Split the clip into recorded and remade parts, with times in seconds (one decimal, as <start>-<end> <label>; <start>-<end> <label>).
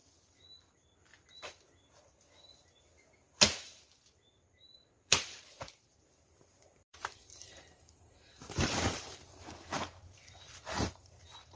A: 0.0-4.9 recorded; 4.9-10.2 remade; 10.2-10.7 recorded; 10.7-11.6 remade